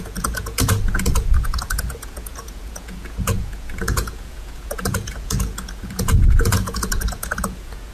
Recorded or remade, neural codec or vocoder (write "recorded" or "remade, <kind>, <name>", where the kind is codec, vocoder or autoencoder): remade, vocoder, Vocos